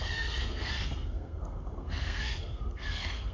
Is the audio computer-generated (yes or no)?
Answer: yes